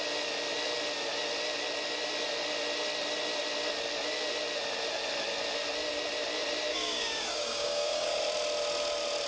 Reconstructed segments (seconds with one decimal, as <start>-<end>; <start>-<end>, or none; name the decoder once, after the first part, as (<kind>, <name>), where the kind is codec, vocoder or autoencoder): 6.7-8.2 (codec, DAC)